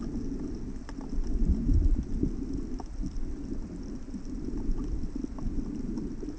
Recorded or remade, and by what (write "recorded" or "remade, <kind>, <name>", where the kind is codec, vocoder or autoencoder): recorded